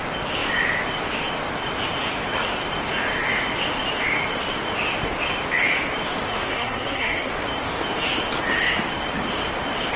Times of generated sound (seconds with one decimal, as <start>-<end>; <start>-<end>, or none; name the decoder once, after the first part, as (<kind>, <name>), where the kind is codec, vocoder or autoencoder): 6.3-7.3 (codec, SNAC)